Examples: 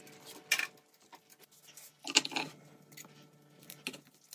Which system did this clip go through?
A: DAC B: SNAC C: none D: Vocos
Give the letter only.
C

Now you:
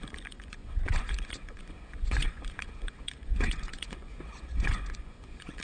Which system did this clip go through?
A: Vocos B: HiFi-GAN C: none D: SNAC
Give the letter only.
A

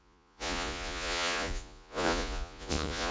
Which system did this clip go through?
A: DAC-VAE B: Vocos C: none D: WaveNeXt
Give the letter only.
B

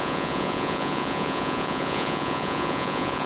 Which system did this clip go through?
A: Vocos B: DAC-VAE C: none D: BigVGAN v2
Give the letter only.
A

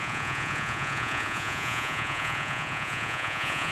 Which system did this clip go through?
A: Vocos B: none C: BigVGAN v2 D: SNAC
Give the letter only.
A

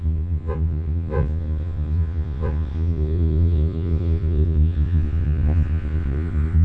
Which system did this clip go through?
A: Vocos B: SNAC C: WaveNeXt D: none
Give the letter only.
A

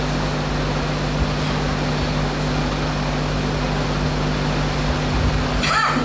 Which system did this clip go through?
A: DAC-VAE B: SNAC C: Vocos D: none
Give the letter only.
D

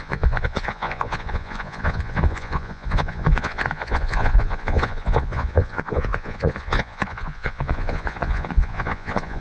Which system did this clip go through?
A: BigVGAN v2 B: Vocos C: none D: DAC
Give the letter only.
B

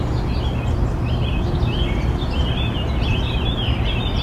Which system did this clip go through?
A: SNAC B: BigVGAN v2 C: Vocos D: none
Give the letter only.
D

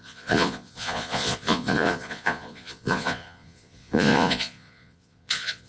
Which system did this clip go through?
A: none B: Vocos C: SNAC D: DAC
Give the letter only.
B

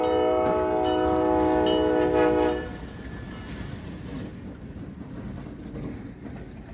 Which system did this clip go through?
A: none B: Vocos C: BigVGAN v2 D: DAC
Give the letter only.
A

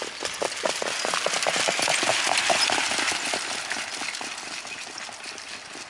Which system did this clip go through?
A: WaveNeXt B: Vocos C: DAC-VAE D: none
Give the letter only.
D